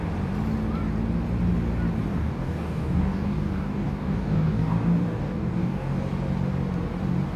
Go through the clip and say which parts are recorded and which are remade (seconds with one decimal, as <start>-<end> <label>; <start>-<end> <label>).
0.0-2.1 recorded; 2.1-6.0 remade; 6.0-7.4 recorded